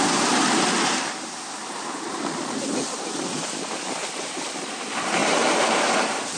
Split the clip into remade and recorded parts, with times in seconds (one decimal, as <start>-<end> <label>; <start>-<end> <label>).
0.0-1.6 recorded; 1.6-2.6 remade; 2.6-5.2 recorded; 5.2-6.4 remade